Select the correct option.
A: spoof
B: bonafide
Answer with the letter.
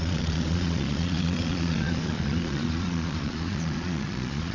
A